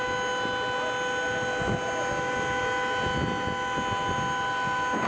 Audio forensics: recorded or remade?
recorded